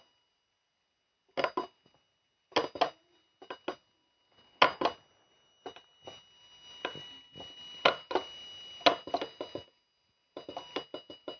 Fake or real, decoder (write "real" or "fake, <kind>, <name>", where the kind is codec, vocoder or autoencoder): real